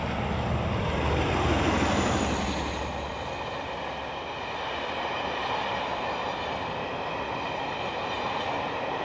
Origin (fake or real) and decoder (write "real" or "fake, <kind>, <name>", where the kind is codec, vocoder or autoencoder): real